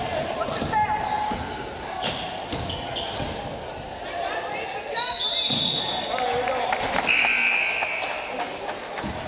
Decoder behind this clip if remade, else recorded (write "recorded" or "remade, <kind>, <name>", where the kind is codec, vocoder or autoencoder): recorded